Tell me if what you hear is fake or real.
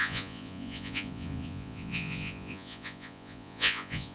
fake